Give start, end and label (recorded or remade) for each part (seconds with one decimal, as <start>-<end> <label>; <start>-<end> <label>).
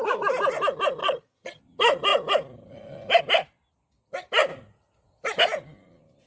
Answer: 0.0-1.0 recorded; 1.0-1.6 remade; 1.6-6.3 recorded